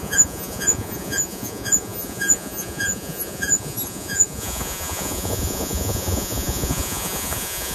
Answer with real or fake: fake